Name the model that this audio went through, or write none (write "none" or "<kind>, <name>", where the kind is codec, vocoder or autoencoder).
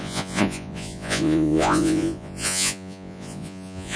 vocoder, Vocos